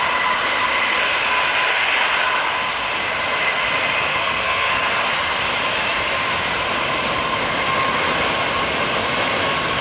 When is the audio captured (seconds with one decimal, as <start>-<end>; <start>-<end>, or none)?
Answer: 0.0-4.1; 4.7-9.8